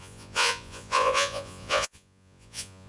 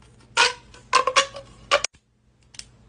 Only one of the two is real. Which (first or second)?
second